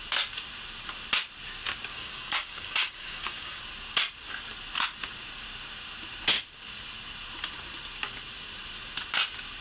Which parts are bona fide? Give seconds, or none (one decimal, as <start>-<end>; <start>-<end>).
0.0-1.9; 3.6-9.6